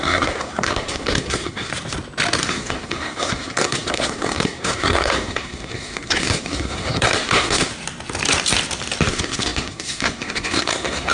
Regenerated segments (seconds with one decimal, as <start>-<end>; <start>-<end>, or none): 0.0-1.7; 2.5-7.7; 9.1-11.1